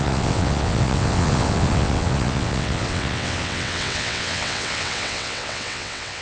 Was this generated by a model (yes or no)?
yes